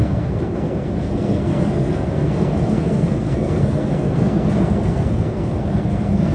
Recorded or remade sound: remade